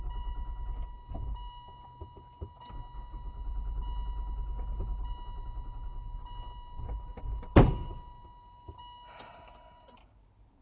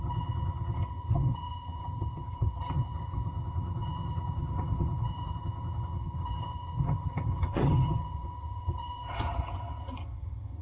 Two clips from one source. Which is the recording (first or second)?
first